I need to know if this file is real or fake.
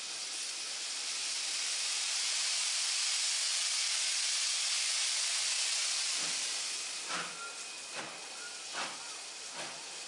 real